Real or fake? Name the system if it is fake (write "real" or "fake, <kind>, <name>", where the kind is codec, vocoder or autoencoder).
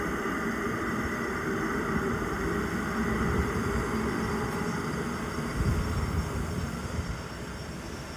fake, vocoder, BigVGAN v2